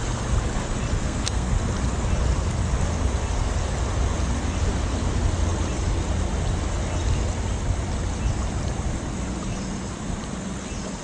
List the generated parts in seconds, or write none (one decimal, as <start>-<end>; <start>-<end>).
1.0-1.5